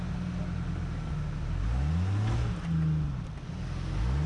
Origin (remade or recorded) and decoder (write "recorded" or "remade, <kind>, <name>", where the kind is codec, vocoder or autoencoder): recorded